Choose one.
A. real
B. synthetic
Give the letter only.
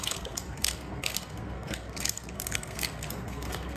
B